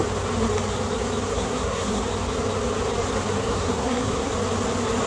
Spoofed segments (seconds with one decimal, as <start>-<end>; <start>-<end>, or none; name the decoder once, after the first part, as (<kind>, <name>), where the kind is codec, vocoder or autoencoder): 1.3-2.0 (codec, SNAC); 3.4-4.3